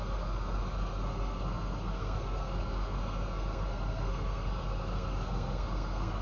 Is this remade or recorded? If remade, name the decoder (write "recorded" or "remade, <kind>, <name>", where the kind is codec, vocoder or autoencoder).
remade, codec, SNAC